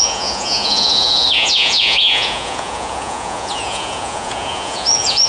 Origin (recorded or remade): remade